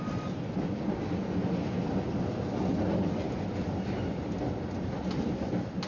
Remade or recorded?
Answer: recorded